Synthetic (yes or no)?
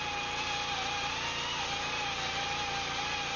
no